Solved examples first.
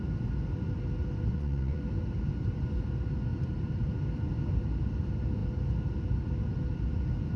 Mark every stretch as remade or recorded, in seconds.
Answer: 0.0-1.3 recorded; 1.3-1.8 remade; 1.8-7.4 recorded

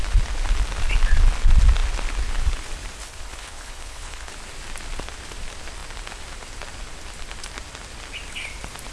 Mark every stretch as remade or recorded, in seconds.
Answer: 0.0-3.0 recorded; 3.0-4.3 remade; 4.3-8.9 recorded

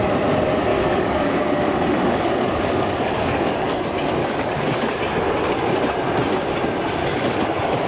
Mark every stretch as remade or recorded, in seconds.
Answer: 0.0-0.7 recorded; 0.7-3.8 remade; 3.8-4.2 recorded; 4.2-5.0 remade; 5.0-7.0 recorded; 7.0-7.9 remade

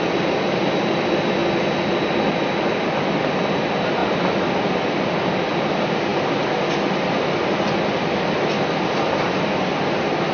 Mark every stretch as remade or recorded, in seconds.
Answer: 0.0-1.4 remade; 1.4-2.3 recorded; 2.3-4.0 remade; 4.0-5.6 recorded; 5.6-6.1 remade; 6.1-9.9 recorded; 9.9-10.3 remade

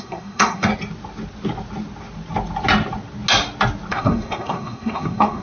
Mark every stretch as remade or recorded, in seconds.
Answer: 0.0-0.7 remade; 0.7-3.9 recorded; 3.9-5.4 remade

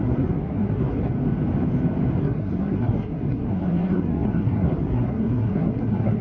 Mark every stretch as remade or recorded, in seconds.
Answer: 0.0-1.1 remade; 1.1-2.2 recorded; 2.2-6.2 remade